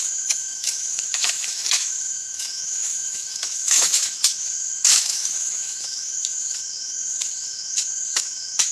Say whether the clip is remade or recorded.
remade